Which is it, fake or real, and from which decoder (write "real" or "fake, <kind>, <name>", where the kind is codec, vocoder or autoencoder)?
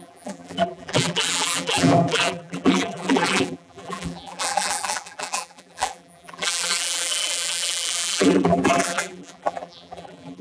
fake, vocoder, BigVGAN v2